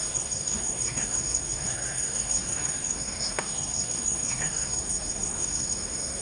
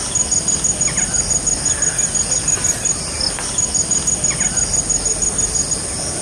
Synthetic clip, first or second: first